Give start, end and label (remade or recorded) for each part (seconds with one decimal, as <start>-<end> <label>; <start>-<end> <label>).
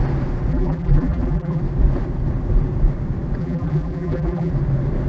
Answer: 0.0-0.5 recorded; 0.5-1.6 remade; 1.6-3.4 recorded; 3.4-4.5 remade; 4.5-5.1 recorded